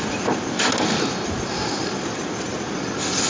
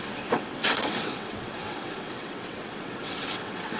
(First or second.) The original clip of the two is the first